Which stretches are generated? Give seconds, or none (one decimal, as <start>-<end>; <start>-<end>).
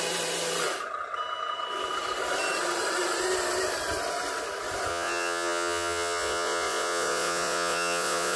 4.9-8.4